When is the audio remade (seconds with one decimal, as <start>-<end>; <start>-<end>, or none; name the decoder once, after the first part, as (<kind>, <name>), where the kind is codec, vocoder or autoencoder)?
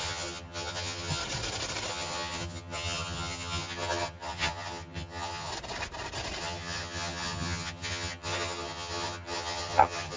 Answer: 0.0-1.2 (vocoder, HiFi-GAN); 1.9-5.5; 6.4-10.2